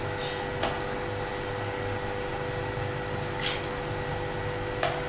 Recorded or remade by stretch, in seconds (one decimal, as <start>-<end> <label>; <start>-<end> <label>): 0.0-5.1 recorded